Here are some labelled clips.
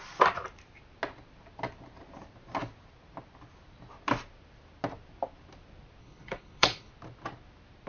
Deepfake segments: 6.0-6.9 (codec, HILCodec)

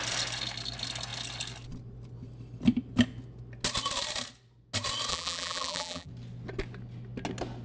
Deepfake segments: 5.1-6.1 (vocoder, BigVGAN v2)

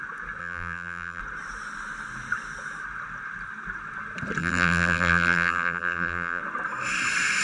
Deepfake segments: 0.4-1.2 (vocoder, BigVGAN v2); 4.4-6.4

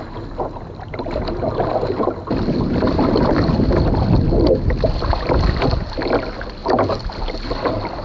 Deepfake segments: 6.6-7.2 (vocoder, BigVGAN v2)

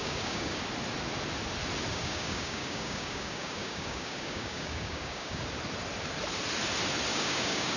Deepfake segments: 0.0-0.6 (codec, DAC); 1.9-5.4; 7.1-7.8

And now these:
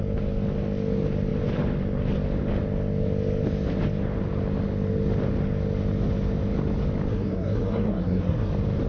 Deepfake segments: 7.1-8.5 (codec, SNAC)

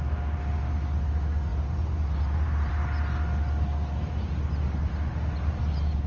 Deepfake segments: 1.5-2.7 (vocoder, BigVGAN v2); 5.1-5.6

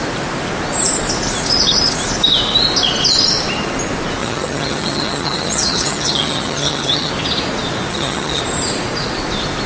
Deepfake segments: 4.2-7.1 (vocoder, HiFi-GAN); 7.9-8.4